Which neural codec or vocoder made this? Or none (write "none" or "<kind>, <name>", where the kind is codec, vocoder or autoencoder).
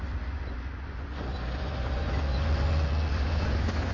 vocoder, Vocos